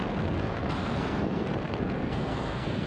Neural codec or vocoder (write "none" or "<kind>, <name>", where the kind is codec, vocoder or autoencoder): codec, SNAC